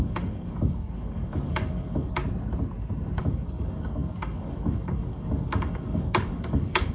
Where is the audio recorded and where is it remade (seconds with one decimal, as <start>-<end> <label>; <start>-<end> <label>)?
0.0-2.2 remade; 2.2-3.2 recorded; 3.2-6.9 remade